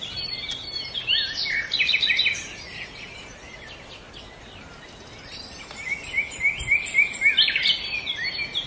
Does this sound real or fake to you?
real